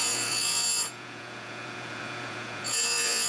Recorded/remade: remade